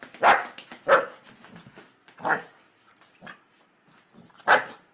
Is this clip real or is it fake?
real